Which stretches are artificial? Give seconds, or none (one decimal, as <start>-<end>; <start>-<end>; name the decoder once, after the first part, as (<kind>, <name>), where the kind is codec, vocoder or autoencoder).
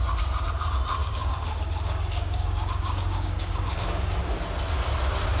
1.0-4.2 (codec, DAC)